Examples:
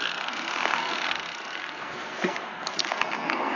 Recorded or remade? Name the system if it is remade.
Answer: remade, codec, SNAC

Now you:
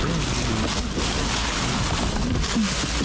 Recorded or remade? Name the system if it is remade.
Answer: recorded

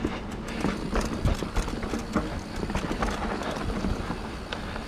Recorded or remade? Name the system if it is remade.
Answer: recorded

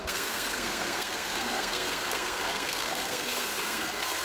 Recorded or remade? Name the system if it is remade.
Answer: remade, codec, SNAC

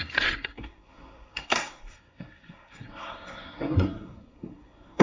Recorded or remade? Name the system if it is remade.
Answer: remade, codec, SNAC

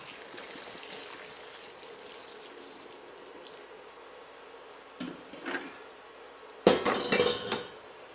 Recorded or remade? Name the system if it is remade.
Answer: recorded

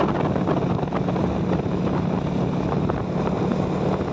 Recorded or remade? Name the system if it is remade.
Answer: recorded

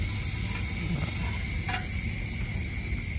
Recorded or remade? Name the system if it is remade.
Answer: recorded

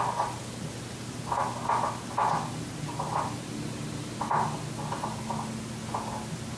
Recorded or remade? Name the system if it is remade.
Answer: recorded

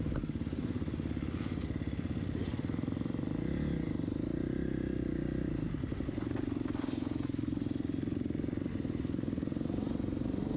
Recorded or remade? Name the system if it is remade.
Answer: recorded